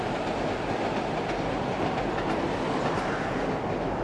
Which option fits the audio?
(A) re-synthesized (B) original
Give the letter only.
B